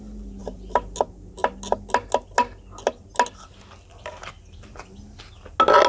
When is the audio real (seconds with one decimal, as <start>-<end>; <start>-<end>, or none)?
0.0-5.9